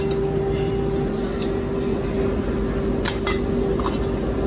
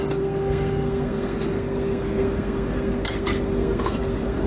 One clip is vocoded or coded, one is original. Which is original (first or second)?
first